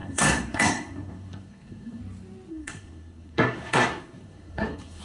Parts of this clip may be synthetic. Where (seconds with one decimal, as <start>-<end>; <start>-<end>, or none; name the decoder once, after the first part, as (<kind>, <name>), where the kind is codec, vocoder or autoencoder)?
0.0-2.0 (codec, SNAC); 2.5-5.0